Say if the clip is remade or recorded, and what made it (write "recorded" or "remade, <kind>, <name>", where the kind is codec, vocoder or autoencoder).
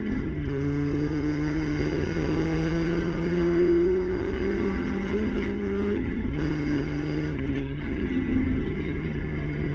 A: remade, vocoder, HiFi-GAN